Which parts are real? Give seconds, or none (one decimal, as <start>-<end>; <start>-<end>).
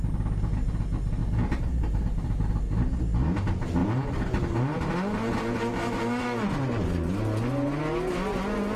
0.0-1.2; 2.6-8.8